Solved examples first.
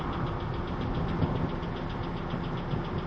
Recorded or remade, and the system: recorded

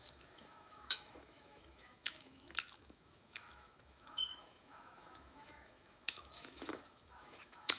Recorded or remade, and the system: remade, autoencoder, DAC-VAE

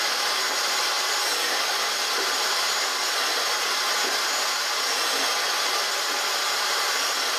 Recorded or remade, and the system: recorded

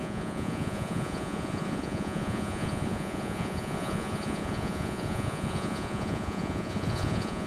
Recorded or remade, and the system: remade, vocoder, Vocos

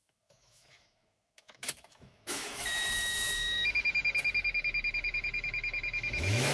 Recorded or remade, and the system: remade, autoencoder, DAC-VAE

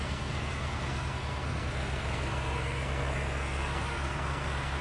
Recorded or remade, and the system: remade, codec, SNAC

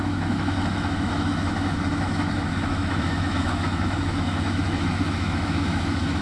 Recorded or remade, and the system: remade, autoencoder, DAC-VAE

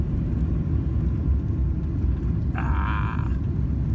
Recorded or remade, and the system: recorded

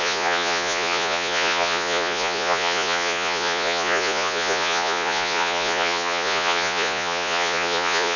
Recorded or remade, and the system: remade, vocoder, Vocos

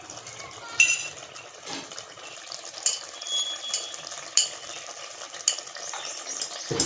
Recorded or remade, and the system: recorded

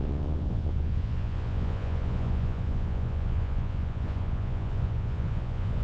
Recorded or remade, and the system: remade, vocoder, Vocos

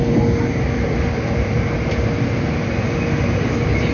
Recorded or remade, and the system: recorded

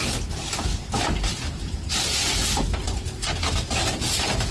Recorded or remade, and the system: recorded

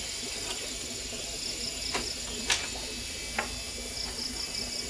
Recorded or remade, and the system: recorded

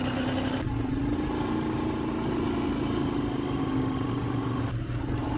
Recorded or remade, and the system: recorded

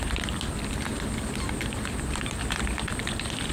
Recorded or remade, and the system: recorded